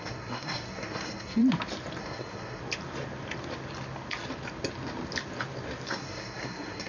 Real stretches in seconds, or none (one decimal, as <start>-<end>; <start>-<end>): 1.4-2.0; 2.6-5.9